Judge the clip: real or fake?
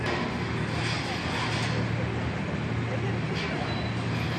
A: real